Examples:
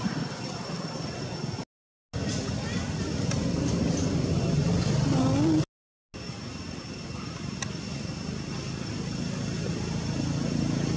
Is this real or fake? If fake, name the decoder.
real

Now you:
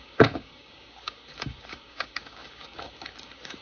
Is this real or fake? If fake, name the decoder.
fake, codec, DAC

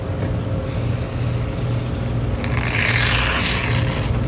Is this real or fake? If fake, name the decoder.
real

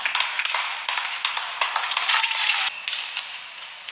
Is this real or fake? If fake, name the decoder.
real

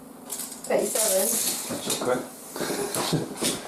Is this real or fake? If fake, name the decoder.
real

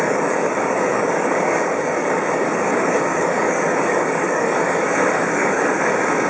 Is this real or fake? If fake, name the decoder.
fake, codec, DAC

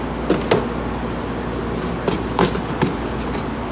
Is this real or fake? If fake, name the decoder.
real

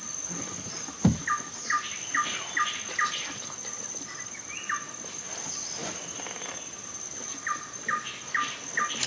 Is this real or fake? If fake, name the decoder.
real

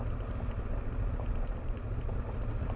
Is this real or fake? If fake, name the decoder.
real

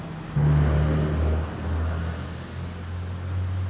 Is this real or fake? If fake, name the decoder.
real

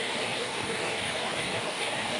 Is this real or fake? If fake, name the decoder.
fake, codec, DAC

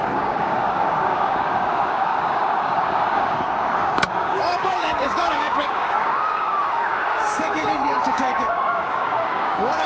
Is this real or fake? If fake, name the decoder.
fake, codec, DAC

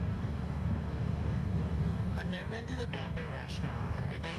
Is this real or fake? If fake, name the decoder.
fake, codec, DAC